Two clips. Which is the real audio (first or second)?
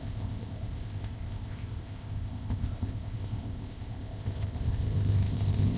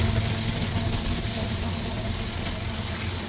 second